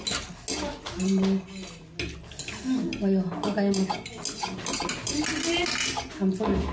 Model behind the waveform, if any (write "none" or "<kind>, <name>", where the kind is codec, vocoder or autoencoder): none